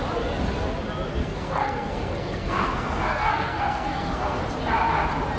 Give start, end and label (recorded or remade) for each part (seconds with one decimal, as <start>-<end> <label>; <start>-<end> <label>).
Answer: 0.0-1.2 recorded; 1.2-4.4 remade; 4.4-5.4 recorded